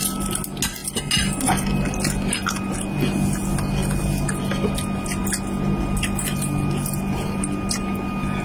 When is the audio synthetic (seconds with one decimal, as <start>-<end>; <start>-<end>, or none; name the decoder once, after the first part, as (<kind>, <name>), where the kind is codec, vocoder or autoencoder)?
none